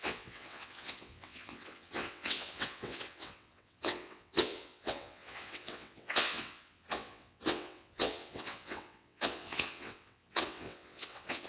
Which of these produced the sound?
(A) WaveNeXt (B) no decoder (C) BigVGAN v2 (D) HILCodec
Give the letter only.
A